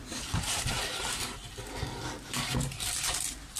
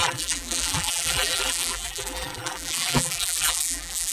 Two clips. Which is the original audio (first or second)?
first